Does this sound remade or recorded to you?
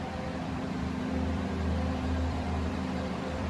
remade